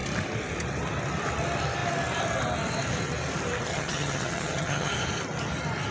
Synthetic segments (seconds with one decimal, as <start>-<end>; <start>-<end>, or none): 3.7-4.9